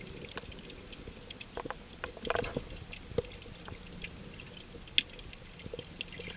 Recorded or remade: recorded